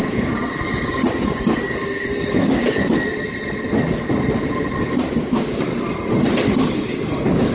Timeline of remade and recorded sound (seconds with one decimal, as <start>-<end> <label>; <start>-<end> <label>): 0.0-2.6 remade; 2.6-4.8 recorded; 4.8-5.7 remade; 5.7-6.9 recorded; 6.9-7.5 remade